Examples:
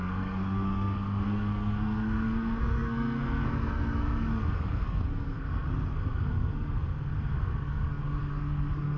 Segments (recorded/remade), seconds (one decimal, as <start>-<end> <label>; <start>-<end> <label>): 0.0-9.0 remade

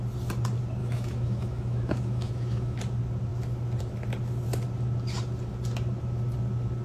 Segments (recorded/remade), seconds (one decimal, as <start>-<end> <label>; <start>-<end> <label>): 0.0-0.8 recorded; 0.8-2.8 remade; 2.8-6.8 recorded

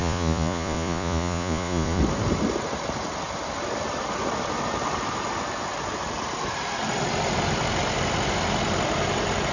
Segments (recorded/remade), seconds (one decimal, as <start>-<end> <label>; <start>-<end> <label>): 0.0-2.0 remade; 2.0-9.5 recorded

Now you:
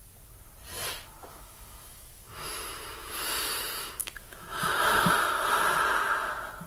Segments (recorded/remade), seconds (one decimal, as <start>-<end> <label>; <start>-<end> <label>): 0.0-1.3 recorded; 1.3-5.1 remade; 5.1-6.7 recorded

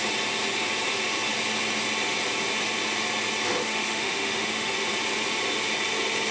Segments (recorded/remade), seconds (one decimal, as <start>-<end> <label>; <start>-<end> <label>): 0.0-3.6 recorded; 3.6-4.7 remade; 4.7-6.3 recorded

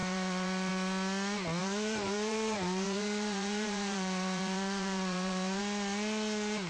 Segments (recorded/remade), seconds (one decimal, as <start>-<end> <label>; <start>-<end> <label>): 0.0-0.7 remade; 0.7-1.6 recorded; 1.6-5.6 remade; 5.6-6.7 recorded